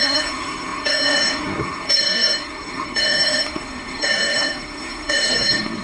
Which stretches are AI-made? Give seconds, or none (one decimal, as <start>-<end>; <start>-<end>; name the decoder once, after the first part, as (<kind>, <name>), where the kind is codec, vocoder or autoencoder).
0.0-5.8 (codec, SNAC)